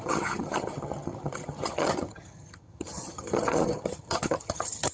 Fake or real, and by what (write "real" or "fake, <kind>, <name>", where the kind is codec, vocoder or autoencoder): fake, vocoder, HiFi-GAN